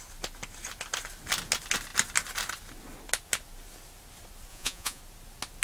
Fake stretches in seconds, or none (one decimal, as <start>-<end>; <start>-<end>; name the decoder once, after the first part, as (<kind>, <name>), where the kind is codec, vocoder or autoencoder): 4.5-5.0 (vocoder, Vocos)